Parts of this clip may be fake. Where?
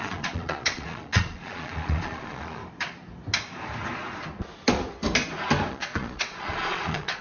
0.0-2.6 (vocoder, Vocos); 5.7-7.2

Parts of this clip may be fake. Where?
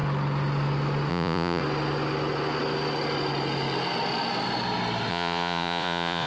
1.1-1.6 (vocoder, Vocos); 5.1-6.3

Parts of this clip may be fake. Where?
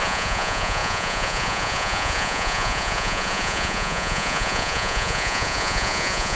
0.0-6.4 (vocoder, Vocos)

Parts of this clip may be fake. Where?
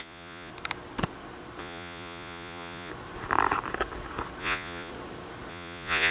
0.0-0.5 (vocoder, Vocos); 1.6-2.9; 4.4-4.9; 5.5-6.1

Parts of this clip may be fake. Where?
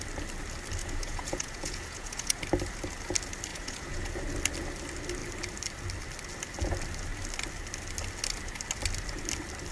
0.8-2.4 (vocoder, Vocos); 3.5-4.2